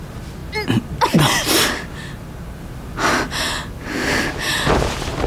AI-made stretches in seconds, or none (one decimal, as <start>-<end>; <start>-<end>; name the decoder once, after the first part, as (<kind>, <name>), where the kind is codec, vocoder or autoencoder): none